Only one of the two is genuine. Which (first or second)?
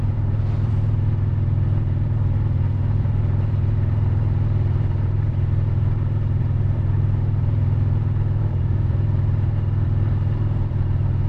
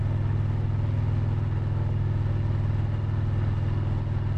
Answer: second